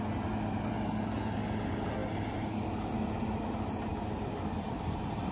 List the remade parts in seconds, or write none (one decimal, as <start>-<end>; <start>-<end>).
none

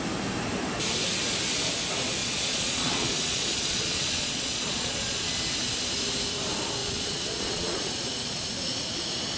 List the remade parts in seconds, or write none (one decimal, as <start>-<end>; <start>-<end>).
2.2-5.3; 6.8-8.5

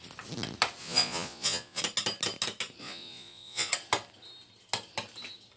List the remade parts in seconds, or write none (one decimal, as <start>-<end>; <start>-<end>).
0.8-1.8; 2.8-3.7

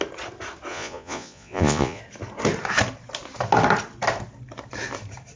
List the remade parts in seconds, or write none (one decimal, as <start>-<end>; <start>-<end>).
0.7-2.0

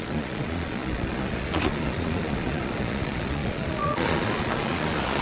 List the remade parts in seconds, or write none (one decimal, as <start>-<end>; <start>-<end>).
0.0-5.2

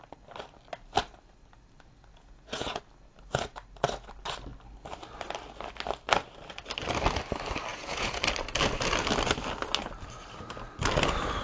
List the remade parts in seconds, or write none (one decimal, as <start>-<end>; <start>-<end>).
2.1-2.8; 7.7-8.2

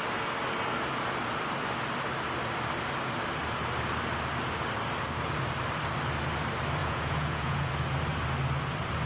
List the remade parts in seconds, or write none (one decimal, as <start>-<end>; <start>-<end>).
6.8-7.7

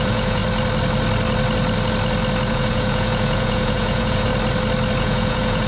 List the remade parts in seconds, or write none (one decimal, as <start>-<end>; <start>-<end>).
0.0-0.4; 2.5-4.3; 5.0-5.7